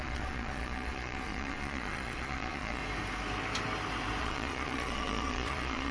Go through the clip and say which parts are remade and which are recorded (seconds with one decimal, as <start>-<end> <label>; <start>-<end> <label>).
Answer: 0.0-2.8 remade; 2.8-4.2 recorded; 4.2-5.9 remade